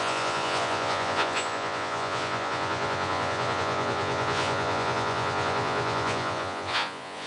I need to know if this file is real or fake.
fake